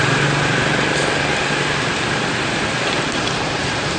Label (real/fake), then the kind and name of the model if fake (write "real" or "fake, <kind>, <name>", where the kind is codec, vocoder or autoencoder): real